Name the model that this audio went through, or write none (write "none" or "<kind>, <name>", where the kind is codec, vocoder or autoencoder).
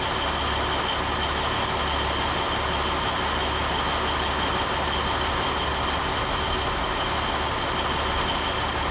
none